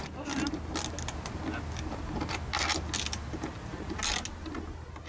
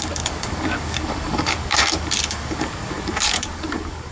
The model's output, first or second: second